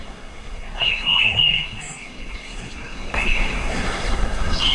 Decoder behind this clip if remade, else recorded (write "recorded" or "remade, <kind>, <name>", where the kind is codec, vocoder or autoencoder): remade, codec, SNAC